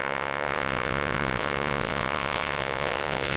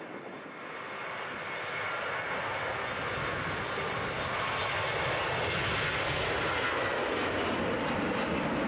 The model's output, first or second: first